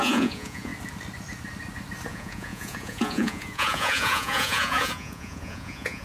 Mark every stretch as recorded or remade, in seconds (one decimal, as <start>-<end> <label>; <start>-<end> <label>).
0.0-0.7 remade; 0.7-2.1 recorded; 2.1-6.0 remade